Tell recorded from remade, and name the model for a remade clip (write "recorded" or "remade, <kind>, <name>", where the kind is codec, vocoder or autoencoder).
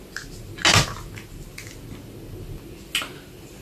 recorded